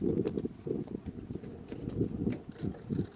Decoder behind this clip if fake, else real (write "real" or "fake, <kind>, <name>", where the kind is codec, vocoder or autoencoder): real